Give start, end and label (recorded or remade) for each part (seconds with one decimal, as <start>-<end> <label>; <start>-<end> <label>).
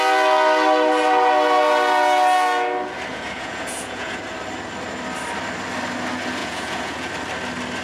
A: 0.0-3.1 recorded; 3.1-4.2 remade; 4.2-6.4 recorded; 6.4-7.1 remade; 7.1-7.8 recorded